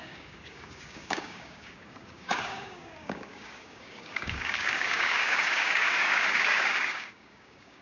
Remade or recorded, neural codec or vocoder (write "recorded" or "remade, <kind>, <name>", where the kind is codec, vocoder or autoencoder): remade, codec, DAC